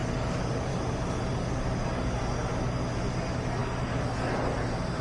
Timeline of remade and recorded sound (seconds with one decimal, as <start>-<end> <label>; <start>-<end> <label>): 0.0-5.0 recorded